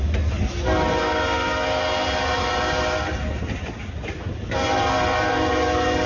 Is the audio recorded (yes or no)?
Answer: yes